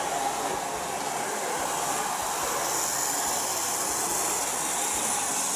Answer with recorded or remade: recorded